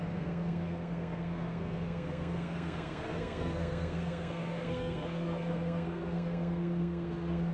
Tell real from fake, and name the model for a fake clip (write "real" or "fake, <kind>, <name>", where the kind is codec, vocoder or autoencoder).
fake, codec, SNAC